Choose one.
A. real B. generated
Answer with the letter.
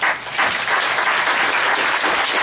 A